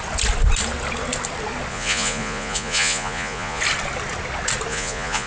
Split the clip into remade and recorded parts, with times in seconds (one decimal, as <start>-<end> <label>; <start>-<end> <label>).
0.0-1.7 recorded; 1.7-3.6 remade; 3.6-4.7 recorded; 4.7-5.3 remade

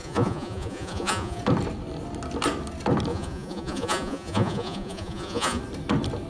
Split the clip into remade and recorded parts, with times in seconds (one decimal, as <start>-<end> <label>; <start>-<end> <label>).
0.0-1.4 remade; 1.4-3.1 recorded; 3.1-5.6 remade; 5.6-6.3 recorded